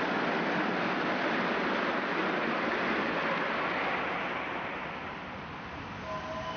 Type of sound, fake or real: real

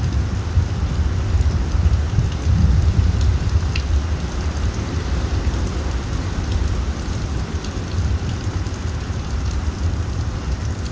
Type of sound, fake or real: real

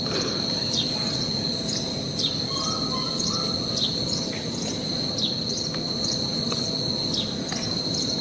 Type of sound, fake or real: real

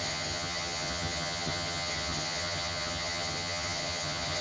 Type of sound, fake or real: fake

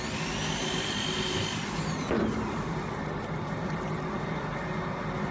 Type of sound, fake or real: real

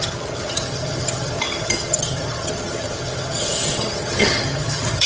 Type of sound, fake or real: fake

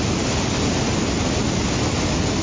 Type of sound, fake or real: real